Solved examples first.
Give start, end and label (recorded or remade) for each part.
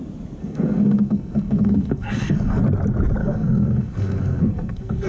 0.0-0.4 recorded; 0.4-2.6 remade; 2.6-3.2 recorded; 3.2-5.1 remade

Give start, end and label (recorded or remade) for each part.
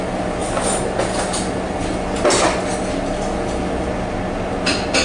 0.0-5.0 recorded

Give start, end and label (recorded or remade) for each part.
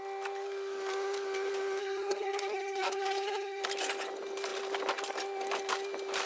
0.0-1.8 recorded; 1.8-3.6 remade; 3.6-6.3 recorded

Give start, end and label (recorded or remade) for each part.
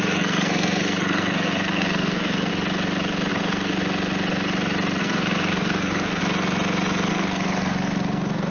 0.0-2.5 remade; 2.5-3.3 recorded; 3.3-3.7 remade; 3.7-5.0 recorded; 5.0-6.2 remade; 6.2-7.1 recorded; 7.1-8.5 remade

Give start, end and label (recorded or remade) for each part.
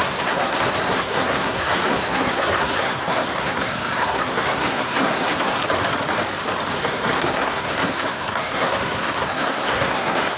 0.0-5.6 remade; 5.6-6.7 recorded; 6.7-10.4 remade